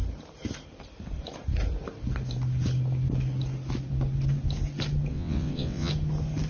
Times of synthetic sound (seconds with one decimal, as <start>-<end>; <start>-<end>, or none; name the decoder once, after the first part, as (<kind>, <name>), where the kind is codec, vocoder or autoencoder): 5.1-5.9 (vocoder, WaveNeXt)